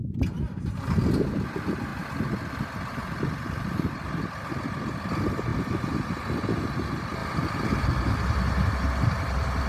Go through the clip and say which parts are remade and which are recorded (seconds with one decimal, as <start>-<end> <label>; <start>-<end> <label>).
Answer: 0.0-5.5 recorded; 5.5-6.6 remade; 6.6-9.7 recorded